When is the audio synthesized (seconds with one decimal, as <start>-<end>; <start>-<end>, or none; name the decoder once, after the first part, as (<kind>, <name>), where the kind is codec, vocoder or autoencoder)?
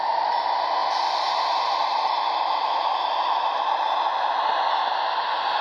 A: none